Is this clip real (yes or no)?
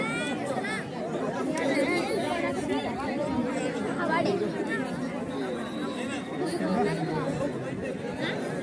yes